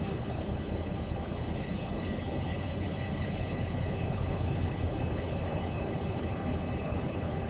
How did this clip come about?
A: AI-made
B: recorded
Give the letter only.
A